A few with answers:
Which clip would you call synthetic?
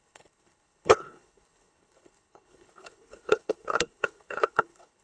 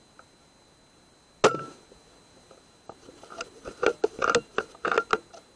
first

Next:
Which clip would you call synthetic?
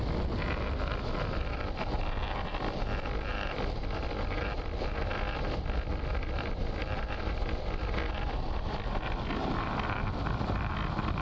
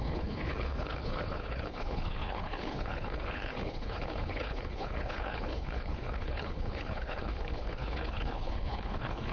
second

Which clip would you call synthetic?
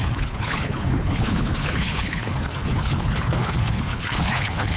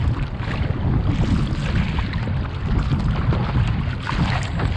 first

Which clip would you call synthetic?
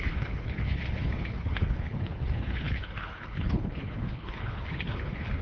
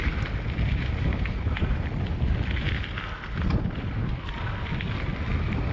first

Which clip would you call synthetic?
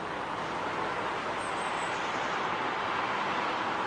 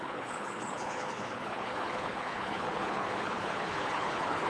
second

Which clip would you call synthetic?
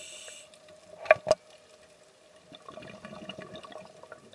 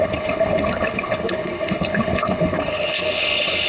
second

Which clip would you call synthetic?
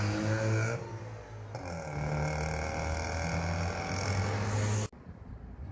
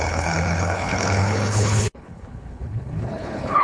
second